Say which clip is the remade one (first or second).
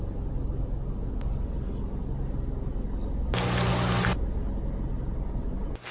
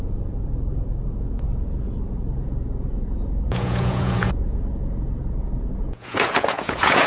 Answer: second